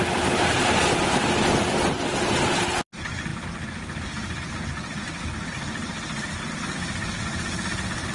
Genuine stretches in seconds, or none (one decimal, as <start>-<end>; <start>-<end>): 0.0-8.1